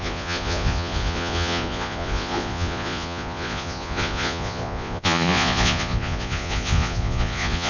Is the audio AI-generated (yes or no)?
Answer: yes